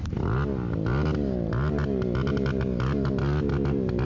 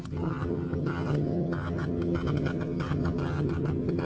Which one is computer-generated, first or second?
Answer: second